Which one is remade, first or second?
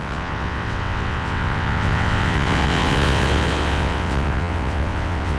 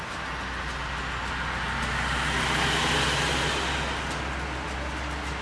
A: first